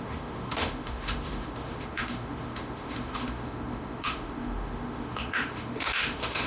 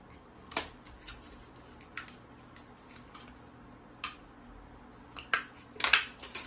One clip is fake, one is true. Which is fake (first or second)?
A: first